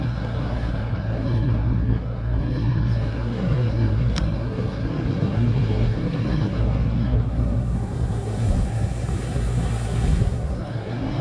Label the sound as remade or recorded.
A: remade